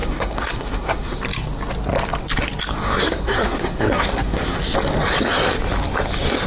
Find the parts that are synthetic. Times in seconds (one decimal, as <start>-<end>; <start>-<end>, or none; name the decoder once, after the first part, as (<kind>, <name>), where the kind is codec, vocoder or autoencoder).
0.0-1.2 (codec, SNAC); 2.8-4.6